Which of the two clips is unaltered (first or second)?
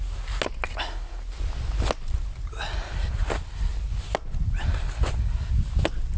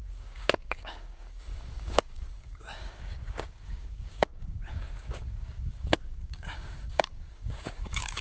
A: first